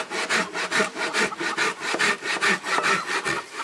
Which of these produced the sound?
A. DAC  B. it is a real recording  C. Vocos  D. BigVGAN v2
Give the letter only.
B